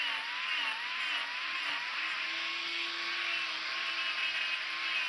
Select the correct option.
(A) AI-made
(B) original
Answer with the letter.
B